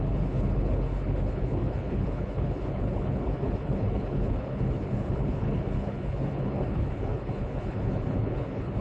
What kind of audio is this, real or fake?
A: fake